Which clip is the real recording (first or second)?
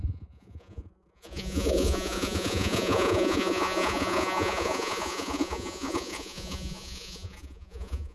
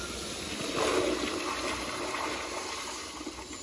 second